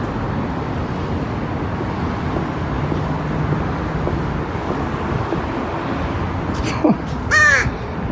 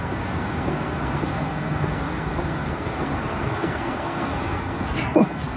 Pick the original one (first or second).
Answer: first